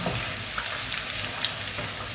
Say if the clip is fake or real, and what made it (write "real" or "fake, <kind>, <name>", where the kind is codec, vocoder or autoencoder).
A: real